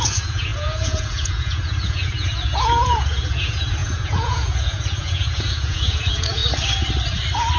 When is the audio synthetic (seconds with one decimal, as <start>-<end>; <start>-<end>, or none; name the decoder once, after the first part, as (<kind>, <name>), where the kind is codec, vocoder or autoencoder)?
0.0-6.4 (vocoder, Vocos)